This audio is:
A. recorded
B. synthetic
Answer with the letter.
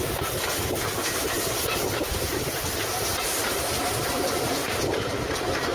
B